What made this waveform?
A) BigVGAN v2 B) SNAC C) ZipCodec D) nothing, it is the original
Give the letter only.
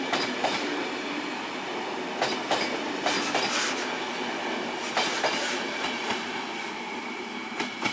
D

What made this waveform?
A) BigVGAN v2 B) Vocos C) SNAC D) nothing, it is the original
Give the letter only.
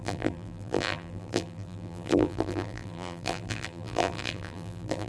A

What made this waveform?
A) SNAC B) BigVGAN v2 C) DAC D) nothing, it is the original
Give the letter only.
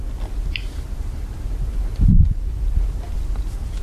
D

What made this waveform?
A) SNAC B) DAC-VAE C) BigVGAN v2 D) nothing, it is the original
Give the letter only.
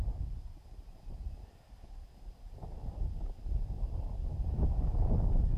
D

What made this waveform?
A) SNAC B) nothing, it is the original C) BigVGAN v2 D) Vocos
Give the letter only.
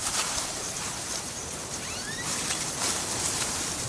C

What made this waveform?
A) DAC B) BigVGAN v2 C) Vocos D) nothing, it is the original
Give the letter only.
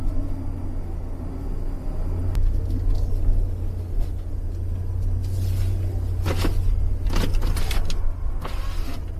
D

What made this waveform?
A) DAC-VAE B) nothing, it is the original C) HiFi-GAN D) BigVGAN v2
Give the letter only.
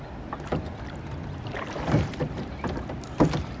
D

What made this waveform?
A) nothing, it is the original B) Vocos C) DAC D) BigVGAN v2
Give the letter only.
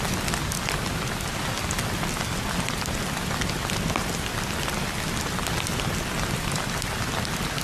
A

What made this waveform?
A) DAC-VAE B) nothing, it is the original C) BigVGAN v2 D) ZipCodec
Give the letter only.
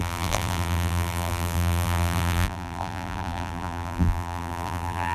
C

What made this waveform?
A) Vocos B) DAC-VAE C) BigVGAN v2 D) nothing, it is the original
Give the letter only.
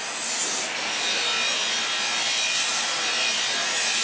D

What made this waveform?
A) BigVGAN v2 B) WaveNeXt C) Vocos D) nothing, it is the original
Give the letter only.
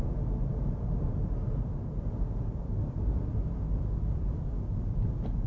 A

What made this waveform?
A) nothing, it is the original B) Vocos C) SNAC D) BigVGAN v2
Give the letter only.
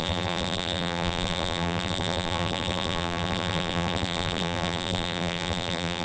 D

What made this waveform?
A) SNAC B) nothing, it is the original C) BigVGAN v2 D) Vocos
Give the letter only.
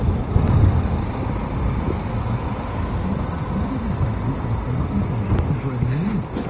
B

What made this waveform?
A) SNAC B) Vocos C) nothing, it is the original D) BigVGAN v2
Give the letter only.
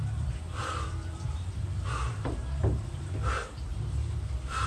D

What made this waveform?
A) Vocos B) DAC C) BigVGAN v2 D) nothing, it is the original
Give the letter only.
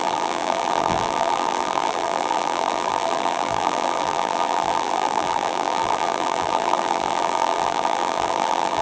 C